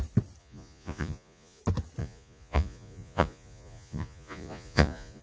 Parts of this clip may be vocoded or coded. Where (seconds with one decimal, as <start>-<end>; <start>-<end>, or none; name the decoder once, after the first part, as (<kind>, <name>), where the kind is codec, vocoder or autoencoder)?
0.4-1.6 (vocoder, Vocos); 2.0-5.2